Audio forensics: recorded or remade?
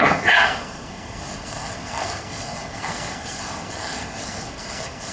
remade